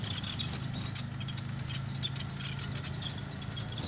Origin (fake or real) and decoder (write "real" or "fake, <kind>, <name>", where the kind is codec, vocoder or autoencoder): real